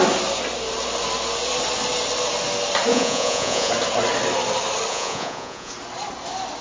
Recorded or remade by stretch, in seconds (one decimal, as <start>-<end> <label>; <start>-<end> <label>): 0.0-2.9 recorded; 2.9-3.7 remade; 3.7-4.9 recorded; 4.9-5.7 remade; 5.7-6.6 recorded